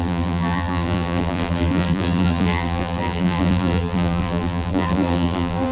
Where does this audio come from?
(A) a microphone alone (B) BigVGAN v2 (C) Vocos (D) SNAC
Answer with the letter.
B